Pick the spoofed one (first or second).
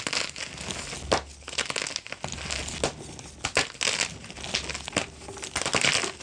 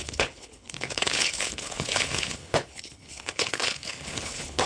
second